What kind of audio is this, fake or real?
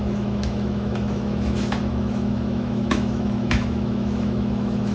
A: fake